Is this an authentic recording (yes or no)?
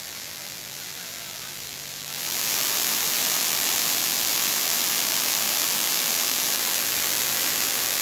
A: no